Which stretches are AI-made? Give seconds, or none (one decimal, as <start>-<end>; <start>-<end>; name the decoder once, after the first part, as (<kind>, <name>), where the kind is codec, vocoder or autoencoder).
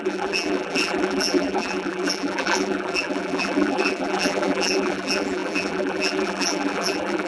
0.0-7.3 (vocoder, BigVGAN v2)